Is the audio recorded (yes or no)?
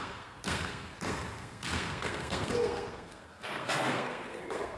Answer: no